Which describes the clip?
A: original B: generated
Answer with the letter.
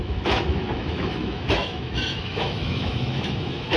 B